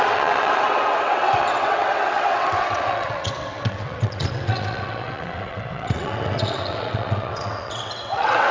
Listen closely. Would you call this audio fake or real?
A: fake